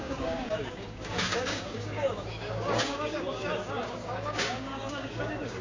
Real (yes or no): no